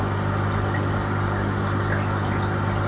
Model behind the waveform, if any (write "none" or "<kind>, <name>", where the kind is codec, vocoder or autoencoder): none